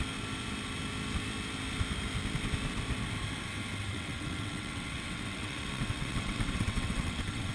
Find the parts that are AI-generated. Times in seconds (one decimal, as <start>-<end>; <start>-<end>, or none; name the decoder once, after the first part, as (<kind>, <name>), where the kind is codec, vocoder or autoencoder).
3.9-7.5 (vocoder, WaveNeXt)